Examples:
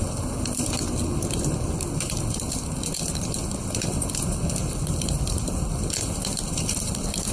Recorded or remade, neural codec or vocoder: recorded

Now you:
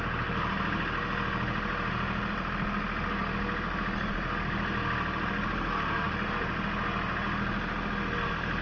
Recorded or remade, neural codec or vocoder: recorded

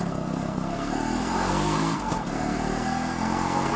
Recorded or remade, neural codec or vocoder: remade, codec, SNAC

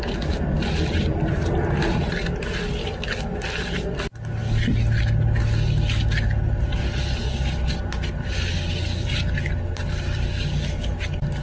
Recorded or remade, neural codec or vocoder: recorded